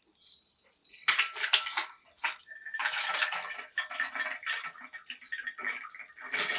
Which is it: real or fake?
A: real